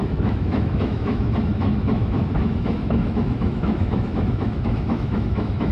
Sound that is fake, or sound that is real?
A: fake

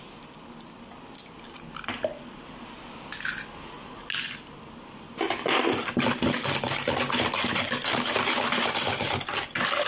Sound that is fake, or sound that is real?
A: real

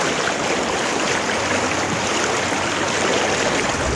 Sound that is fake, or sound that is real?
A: real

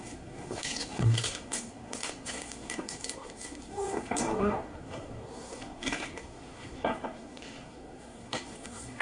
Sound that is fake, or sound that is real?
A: fake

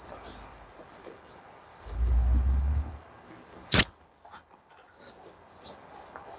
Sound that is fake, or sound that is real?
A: real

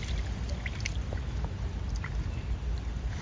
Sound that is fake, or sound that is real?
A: real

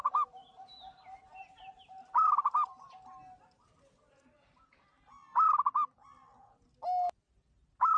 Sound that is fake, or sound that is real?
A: real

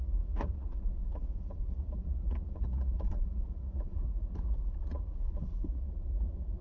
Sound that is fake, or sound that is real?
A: fake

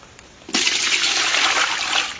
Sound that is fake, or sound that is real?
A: real